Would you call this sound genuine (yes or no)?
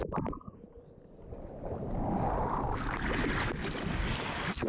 yes